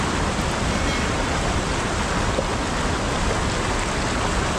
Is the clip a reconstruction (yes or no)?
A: no